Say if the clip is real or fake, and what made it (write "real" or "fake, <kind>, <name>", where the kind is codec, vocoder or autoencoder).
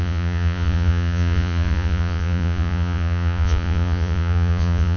fake, vocoder, Vocos